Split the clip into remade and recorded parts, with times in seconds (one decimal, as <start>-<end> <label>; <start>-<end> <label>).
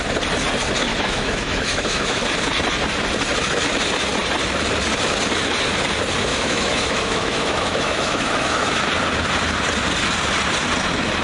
0.0-0.9 recorded; 0.9-2.2 remade; 2.2-6.3 recorded; 6.3-8.9 remade; 8.9-11.2 recorded